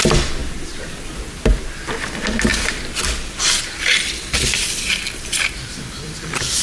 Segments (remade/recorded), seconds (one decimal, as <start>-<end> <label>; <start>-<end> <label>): 0.0-2.5 recorded; 2.5-6.6 remade